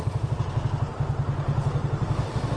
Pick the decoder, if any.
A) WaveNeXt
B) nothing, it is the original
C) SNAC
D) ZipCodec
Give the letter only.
B